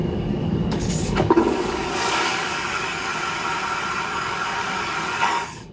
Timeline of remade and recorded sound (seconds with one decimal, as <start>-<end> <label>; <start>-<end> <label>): 0.0-3.1 remade; 3.1-4.0 recorded; 4.0-5.7 remade